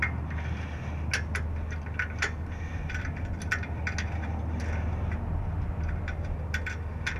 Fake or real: real